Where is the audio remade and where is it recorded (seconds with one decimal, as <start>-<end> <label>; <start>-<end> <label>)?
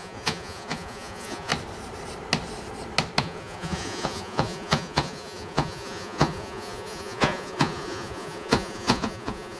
0.0-1.5 remade; 1.5-3.2 recorded; 3.2-9.6 remade